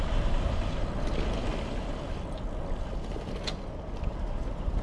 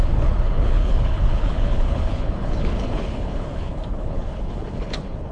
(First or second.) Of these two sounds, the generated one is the second